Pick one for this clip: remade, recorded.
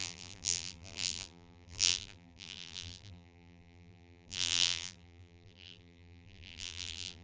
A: remade